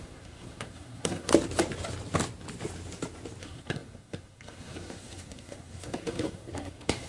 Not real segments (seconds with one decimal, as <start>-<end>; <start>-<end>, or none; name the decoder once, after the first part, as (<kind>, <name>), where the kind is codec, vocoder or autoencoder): 0.0-1.3 (codec, SNAC); 3.4-7.1